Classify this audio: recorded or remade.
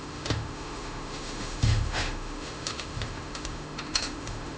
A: remade